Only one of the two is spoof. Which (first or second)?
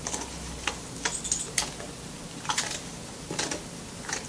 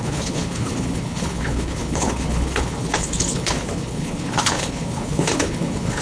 second